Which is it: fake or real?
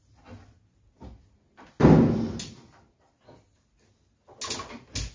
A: real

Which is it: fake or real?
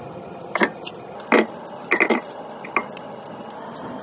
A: real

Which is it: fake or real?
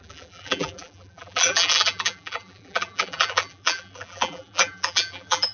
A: fake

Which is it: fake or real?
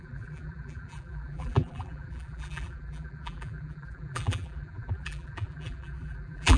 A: fake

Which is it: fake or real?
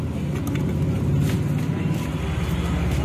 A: real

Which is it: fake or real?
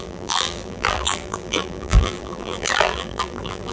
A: fake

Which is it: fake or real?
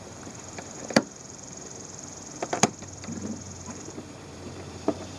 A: fake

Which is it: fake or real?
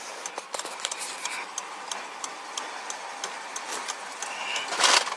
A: fake